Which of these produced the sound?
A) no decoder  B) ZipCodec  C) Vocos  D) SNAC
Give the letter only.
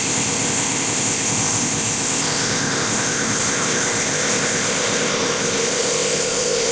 B